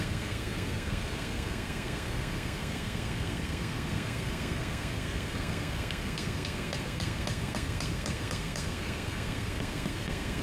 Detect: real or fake fake